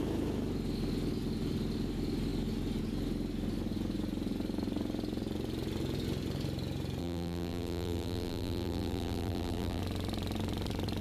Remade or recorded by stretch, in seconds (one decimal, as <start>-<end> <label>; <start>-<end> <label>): 0.0-7.0 recorded; 7.0-9.8 remade; 9.8-11.0 recorded